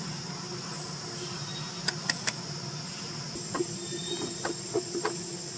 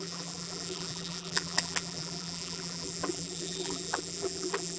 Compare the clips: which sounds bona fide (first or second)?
first